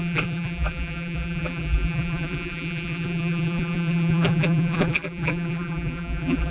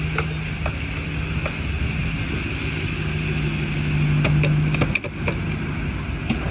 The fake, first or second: first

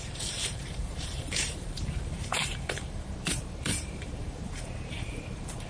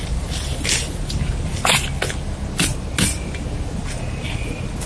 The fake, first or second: first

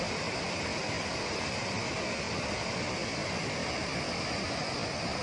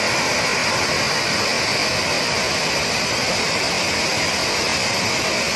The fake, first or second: first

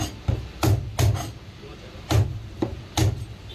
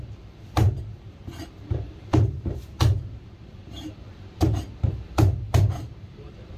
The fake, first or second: second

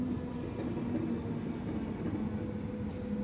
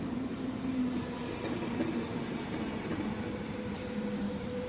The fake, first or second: second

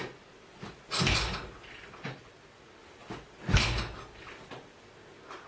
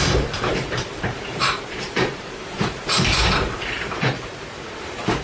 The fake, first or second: second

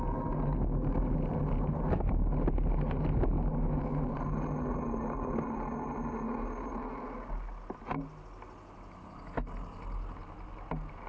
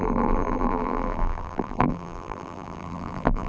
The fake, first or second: second